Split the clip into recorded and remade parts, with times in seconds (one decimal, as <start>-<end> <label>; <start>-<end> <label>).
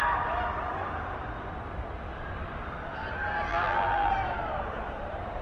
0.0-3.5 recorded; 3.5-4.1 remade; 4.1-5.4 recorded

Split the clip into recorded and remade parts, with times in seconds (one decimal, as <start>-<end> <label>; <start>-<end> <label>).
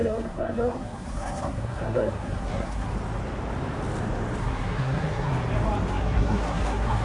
0.0-2.9 remade; 2.9-4.4 recorded; 4.4-5.3 remade; 5.3-5.9 recorded; 5.9-7.0 remade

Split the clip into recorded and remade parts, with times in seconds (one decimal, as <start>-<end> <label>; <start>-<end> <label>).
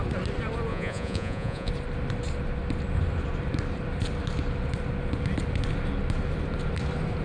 0.0-0.7 recorded; 0.7-1.7 remade; 1.7-7.2 recorded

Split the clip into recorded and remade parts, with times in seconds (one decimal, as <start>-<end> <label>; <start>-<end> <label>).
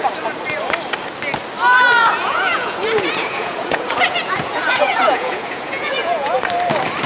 0.0-2.0 recorded; 2.0-6.3 remade; 6.3-7.1 recorded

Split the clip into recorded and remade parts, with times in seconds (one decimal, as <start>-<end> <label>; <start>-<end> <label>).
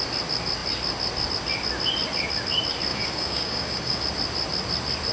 0.0-2.9 recorded; 2.9-4.0 remade; 4.0-5.1 recorded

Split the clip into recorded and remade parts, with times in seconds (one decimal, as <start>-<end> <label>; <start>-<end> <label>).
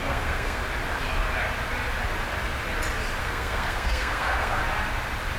0.0-0.6 remade; 0.6-3.2 recorded; 3.2-4.6 remade; 4.6-5.4 recorded